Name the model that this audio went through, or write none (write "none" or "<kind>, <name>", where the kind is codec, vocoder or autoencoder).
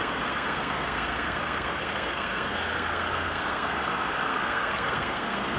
codec, SNAC